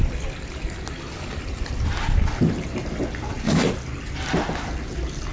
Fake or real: real